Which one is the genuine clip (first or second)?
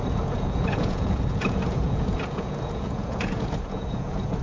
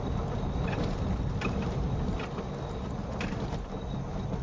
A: second